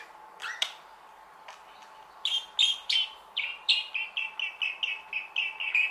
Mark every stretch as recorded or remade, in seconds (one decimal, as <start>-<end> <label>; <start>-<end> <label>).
0.0-2.6 recorded; 2.6-3.7 remade; 3.7-5.9 recorded